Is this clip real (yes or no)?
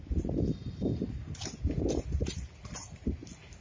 yes